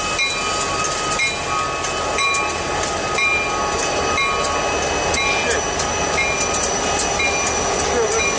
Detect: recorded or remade recorded